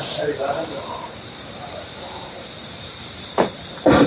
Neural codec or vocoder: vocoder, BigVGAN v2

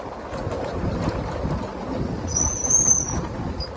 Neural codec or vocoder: none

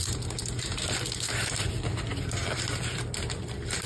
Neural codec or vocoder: none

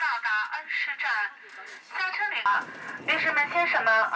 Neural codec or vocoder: none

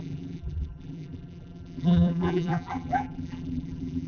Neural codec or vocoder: vocoder, BigVGAN v2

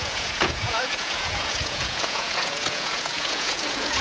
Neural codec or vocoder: vocoder, Vocos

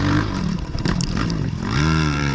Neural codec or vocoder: vocoder, BigVGAN v2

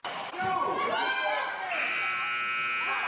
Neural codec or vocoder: none